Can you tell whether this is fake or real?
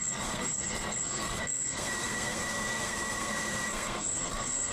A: fake